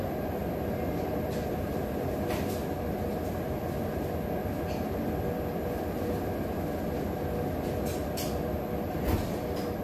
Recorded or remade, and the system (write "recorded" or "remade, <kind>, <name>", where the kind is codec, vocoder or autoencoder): recorded